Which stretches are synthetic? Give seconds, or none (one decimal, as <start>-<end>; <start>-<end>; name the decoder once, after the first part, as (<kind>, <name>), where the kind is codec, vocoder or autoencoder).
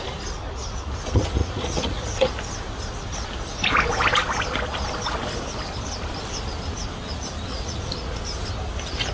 1.4-2.3 (vocoder, Vocos); 7.5-8.2